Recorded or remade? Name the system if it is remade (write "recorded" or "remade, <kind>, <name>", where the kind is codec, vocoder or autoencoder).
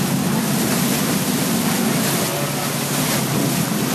recorded